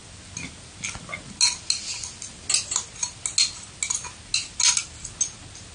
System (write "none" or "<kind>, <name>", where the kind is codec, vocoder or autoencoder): none